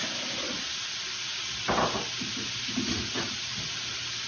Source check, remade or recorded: recorded